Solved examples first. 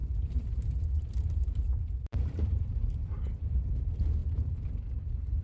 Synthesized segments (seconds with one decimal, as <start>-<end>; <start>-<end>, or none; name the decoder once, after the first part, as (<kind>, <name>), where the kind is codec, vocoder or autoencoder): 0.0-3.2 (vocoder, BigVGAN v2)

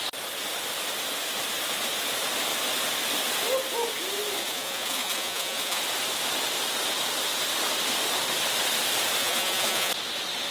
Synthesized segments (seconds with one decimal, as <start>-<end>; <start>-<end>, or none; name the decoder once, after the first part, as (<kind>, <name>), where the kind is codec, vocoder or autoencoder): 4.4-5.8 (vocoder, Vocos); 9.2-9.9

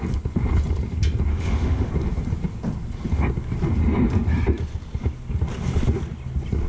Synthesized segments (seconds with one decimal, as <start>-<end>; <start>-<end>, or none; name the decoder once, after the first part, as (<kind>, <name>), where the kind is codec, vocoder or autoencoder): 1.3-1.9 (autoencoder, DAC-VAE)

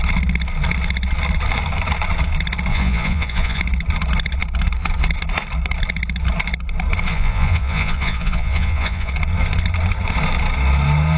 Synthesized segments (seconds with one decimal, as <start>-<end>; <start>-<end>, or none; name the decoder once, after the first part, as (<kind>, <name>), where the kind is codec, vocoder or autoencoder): 2.7-3.6 (vocoder, Vocos); 7.1-9.1